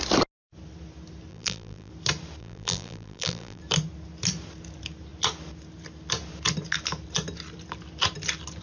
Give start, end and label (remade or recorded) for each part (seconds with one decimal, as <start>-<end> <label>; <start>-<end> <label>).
0.0-1.3 recorded; 1.3-1.9 remade; 1.9-2.4 recorded; 2.4-3.6 remade; 3.6-8.6 recorded